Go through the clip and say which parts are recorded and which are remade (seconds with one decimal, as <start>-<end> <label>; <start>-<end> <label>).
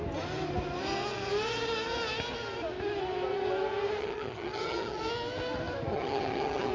0.0-4.0 recorded; 4.0-5.0 remade; 5.0-5.9 recorded; 5.9-6.7 remade